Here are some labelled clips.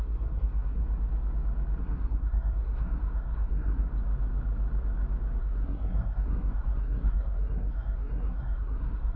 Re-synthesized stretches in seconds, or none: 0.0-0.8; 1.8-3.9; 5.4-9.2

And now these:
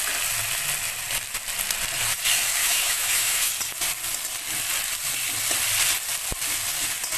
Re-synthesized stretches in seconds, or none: 2.6-3.5

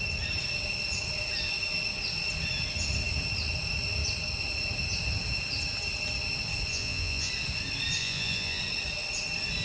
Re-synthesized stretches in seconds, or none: 6.7-7.3; 8.0-8.6